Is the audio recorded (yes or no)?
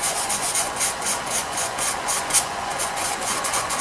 no